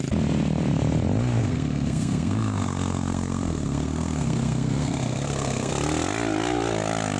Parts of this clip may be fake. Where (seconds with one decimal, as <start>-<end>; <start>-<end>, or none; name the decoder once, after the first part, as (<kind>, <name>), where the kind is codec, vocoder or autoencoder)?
1.4-5.7 (codec, SNAC)